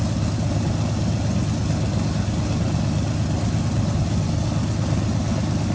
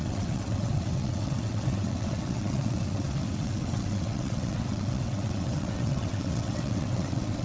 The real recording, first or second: first